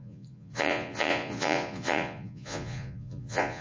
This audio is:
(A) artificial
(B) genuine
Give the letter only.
A